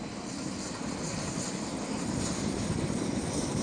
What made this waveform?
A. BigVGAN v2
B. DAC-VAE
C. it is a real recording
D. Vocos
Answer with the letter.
C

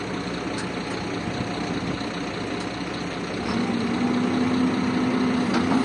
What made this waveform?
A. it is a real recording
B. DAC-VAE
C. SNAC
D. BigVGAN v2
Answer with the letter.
A